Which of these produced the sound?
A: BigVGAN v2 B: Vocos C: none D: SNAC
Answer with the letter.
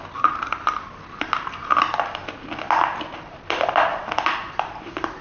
C